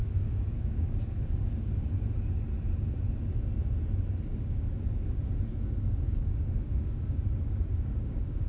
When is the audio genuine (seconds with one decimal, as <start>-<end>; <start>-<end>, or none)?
1.7-4.3